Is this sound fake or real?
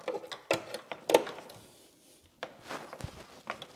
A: real